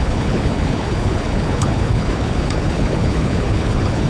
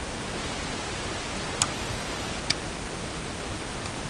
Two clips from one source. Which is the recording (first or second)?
second